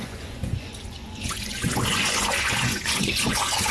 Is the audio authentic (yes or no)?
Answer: no